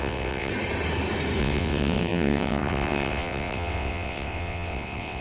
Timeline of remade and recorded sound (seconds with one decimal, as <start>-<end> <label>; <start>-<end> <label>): 0.0-0.5 remade; 0.5-1.4 recorded; 1.4-5.2 remade